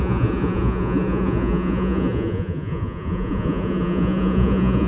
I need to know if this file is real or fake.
fake